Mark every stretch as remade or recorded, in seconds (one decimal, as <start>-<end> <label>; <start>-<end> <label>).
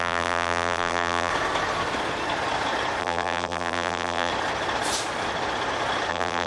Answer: 0.0-1.3 remade; 1.3-3.0 recorded; 3.0-4.3 remade; 4.3-6.1 recorded; 6.1-6.5 remade